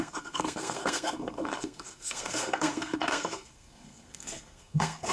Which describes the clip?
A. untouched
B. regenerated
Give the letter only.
B